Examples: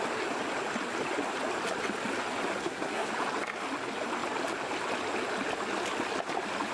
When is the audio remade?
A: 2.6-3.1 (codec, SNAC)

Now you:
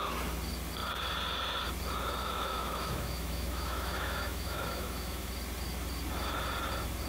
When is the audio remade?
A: 2.2-5.3 (autoencoder, DAC-VAE)